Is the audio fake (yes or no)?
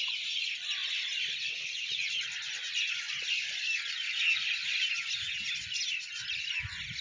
no